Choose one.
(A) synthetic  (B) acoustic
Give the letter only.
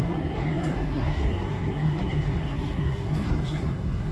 A